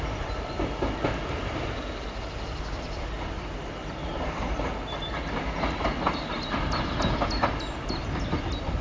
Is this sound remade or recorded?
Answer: recorded